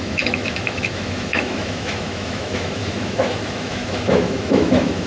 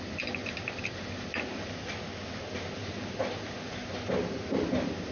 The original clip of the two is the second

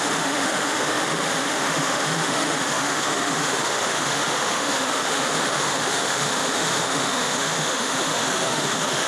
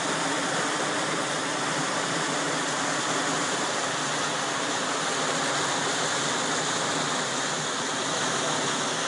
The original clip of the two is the second